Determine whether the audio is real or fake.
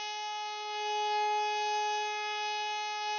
real